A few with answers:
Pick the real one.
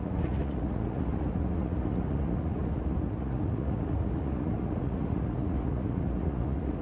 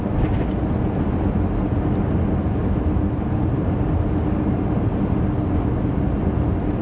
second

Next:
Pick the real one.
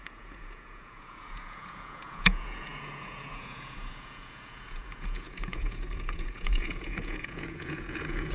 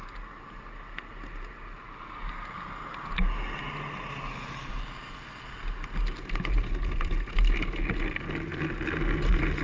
second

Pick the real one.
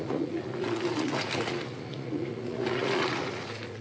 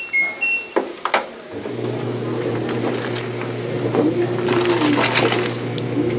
second